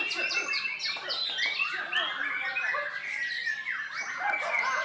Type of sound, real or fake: real